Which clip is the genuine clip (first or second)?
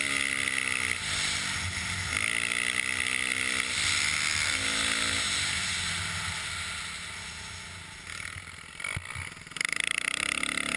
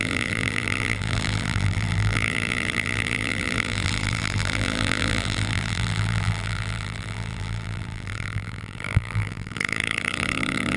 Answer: first